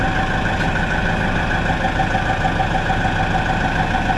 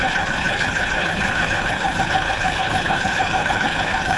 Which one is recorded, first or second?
first